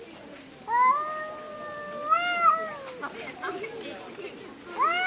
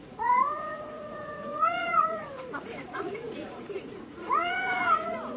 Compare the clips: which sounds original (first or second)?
first